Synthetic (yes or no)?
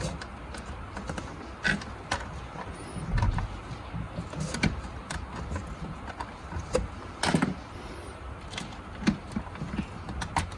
no